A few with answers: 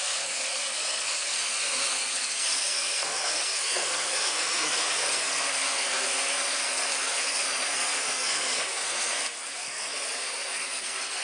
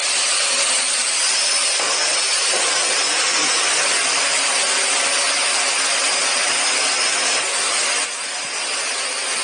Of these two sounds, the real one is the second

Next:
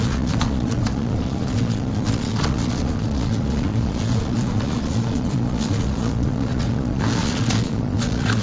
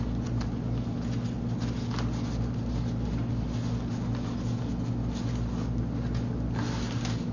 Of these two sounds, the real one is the second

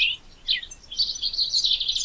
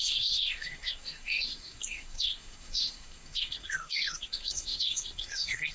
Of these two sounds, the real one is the first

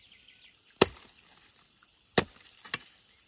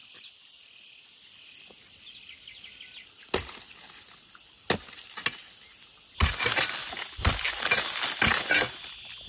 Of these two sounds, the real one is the second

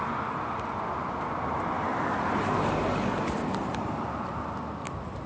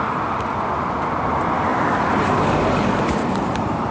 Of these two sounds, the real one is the first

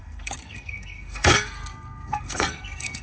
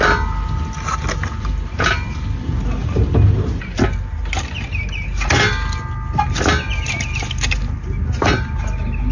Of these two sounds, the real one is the second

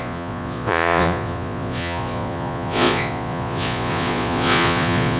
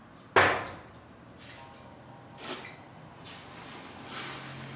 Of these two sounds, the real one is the second